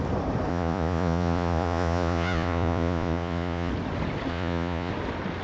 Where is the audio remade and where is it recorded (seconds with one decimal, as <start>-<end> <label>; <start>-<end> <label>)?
0.0-0.5 recorded; 0.5-3.7 remade; 3.7-4.3 recorded; 4.3-4.9 remade; 4.9-5.4 recorded